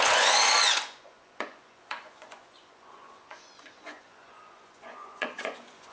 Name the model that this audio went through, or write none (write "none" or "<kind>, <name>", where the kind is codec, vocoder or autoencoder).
vocoder, Vocos